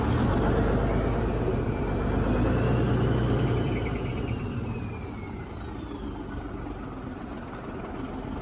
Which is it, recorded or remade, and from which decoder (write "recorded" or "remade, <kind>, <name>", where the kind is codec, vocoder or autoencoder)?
recorded